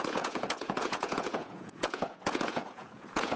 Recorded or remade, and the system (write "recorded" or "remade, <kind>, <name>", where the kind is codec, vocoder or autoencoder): remade, vocoder, Vocos